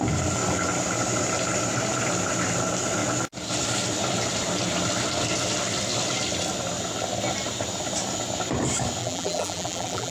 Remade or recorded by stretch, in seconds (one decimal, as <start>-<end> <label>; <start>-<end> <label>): 0.0-9.0 recorded; 9.0-10.1 remade